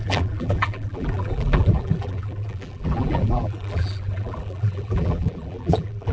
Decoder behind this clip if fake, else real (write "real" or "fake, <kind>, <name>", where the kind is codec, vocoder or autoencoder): fake, vocoder, BigVGAN v2